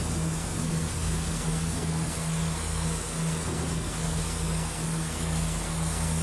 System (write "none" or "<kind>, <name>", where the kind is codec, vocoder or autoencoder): codec, SNAC